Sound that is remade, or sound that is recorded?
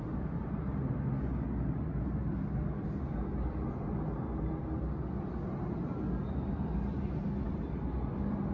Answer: recorded